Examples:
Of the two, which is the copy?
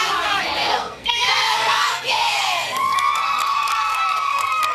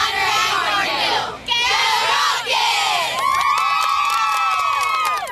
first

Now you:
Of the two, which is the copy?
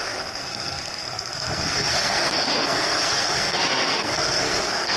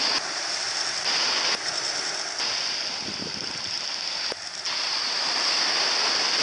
first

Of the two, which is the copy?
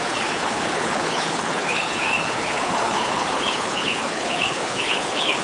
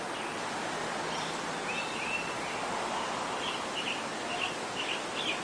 first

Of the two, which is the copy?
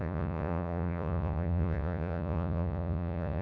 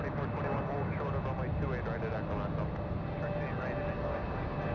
first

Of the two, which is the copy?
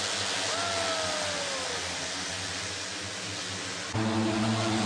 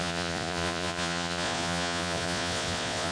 second